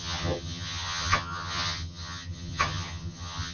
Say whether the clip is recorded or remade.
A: remade